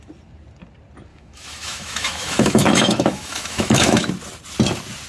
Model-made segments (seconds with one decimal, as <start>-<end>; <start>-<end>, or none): 1.1-4.1